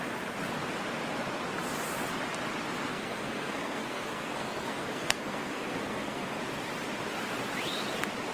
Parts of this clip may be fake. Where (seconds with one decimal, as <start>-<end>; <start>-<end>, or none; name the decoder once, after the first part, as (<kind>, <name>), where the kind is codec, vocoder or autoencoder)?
2.9-6.4 (codec, SNAC)